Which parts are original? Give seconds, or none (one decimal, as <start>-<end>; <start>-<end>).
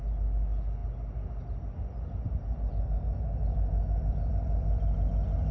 0.0-5.5